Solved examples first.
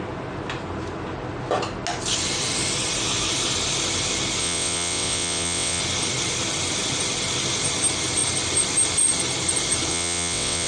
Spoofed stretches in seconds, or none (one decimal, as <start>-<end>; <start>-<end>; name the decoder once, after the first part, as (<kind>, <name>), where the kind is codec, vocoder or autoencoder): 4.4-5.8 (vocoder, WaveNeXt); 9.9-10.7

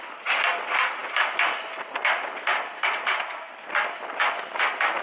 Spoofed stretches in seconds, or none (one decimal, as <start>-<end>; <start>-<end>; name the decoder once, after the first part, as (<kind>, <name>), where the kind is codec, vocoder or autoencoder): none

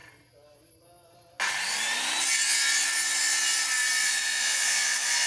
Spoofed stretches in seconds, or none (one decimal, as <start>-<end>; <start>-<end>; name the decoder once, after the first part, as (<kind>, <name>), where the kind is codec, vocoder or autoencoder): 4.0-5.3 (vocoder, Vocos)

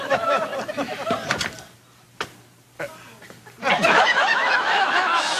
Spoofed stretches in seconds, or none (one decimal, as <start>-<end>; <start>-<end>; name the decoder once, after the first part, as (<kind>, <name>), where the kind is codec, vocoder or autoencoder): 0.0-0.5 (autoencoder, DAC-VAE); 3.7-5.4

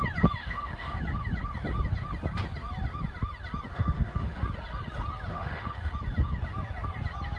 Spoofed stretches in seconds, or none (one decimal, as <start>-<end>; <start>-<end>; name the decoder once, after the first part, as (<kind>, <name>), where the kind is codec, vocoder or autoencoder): 0.4-1.0 (autoencoder, DAC-VAE); 3.7-4.4; 5.3-5.9

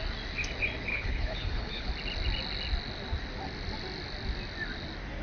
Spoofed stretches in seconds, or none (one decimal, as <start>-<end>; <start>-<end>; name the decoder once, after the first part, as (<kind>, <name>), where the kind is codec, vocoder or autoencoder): 0.9-1.9 (codec, HILCodec)

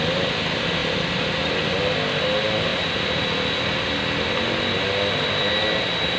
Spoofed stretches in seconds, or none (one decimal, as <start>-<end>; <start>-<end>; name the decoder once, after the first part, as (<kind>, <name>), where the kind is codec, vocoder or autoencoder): none